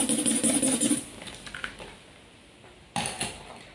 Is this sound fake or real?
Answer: real